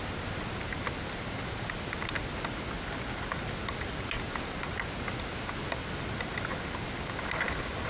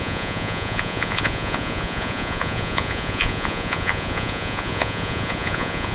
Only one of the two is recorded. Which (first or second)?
first